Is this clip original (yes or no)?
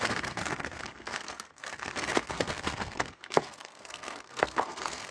no